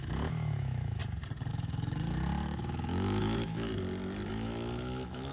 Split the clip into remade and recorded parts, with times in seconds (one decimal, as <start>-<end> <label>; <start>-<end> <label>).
0.0-1.0 remade; 1.0-1.5 recorded; 1.5-3.7 remade; 3.7-4.3 recorded; 4.3-5.3 remade